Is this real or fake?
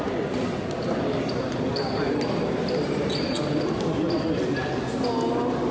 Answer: real